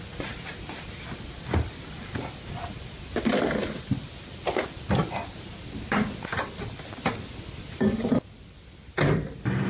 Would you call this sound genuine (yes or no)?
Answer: yes